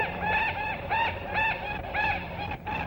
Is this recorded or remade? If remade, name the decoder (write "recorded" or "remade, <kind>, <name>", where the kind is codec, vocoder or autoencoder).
recorded